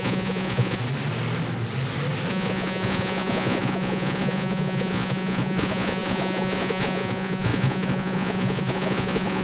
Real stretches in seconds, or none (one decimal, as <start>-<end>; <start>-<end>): 0.8-2.3